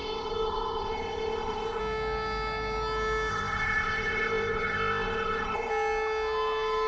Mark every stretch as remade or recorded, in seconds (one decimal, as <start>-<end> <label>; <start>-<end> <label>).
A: 0.0-1.8 remade; 1.8-3.3 recorded; 3.3-5.7 remade; 5.7-6.9 recorded